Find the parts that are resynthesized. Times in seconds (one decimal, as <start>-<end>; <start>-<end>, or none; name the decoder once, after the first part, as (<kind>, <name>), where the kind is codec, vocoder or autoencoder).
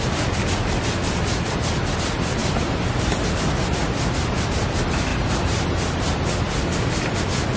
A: 2.4-2.9 (vocoder, BigVGAN v2); 5.1-6.1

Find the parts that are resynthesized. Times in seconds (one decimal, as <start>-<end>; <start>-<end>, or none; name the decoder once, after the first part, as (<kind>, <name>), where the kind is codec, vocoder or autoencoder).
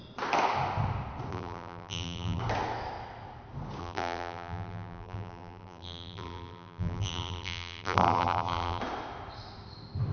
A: 1.3-2.4 (vocoder, BigVGAN v2); 3.8-8.8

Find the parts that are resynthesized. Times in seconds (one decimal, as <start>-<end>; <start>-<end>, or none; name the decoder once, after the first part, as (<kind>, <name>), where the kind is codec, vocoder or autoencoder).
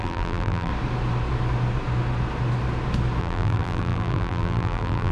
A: 0.0-0.7 (vocoder, BigVGAN v2); 3.2-5.1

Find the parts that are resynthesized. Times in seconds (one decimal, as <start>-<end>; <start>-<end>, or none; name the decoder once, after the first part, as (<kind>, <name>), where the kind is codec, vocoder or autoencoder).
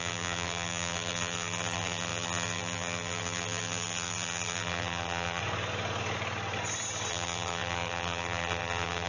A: 0.0-5.4 (vocoder, BigVGAN v2); 7.1-9.1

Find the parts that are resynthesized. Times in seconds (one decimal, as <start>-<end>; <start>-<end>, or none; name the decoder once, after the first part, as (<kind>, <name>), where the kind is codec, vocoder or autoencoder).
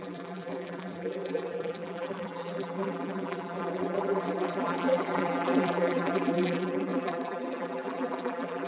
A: 0.0-8.7 (vocoder, BigVGAN v2)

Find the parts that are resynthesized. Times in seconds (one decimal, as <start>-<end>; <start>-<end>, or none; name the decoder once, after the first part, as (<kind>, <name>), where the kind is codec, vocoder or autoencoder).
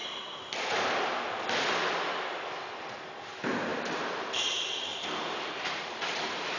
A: 0.0-1.7 (vocoder, BigVGAN v2); 3.7-4.4; 4.9-6.6